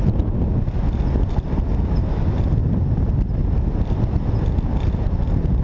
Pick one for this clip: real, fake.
real